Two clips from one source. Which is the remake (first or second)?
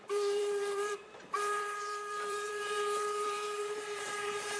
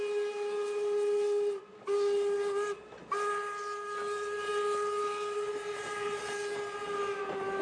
first